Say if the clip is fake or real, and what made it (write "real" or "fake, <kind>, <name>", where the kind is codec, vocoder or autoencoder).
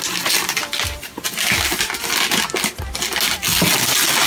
real